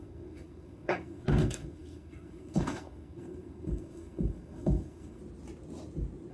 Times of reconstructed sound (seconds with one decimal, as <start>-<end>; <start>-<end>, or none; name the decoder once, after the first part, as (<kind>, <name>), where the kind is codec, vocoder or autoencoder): 0.0-5.2 (codec, SNAC)